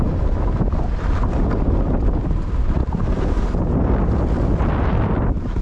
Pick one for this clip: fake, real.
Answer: real